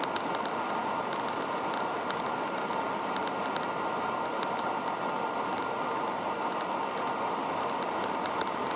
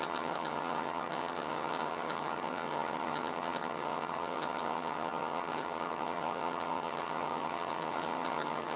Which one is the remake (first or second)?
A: second